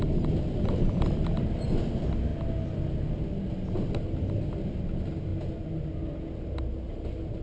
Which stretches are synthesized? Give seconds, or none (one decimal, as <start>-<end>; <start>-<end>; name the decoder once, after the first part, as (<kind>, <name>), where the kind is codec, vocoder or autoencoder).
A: none

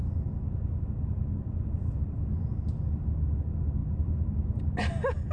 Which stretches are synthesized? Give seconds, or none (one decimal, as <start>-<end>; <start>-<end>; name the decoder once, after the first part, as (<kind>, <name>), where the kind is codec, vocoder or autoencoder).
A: 0.0-3.2 (vocoder, BigVGAN v2); 3.8-4.6

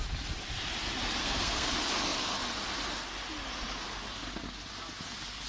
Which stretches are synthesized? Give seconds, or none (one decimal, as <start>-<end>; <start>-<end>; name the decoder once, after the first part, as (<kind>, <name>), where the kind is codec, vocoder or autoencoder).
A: 1.2-1.7 (codec, SNAC)

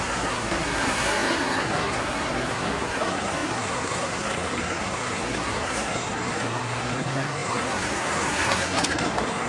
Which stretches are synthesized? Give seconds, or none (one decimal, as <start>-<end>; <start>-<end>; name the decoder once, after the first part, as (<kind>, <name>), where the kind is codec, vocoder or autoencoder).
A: 0.0-9.5 (codec, SNAC)

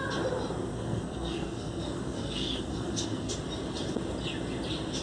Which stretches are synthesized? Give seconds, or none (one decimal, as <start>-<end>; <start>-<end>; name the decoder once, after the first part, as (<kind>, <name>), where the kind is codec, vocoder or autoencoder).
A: 0.7-3.3 (codec, SNAC)

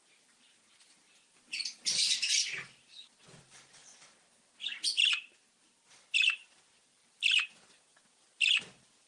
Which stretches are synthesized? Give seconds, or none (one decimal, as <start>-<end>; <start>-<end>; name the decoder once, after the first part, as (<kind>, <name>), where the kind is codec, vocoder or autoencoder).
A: 0.0-3.8 (vocoder, BigVGAN v2); 4.9-9.1

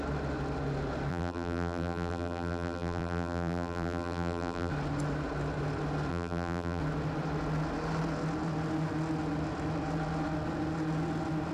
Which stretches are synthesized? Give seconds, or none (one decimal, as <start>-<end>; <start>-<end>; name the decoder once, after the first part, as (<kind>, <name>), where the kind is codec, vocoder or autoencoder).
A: 1.1-4.7 (vocoder, BigVGAN v2); 6.1-6.8